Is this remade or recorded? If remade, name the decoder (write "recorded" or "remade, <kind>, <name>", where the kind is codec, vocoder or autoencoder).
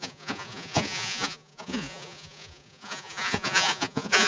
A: remade, vocoder, Vocos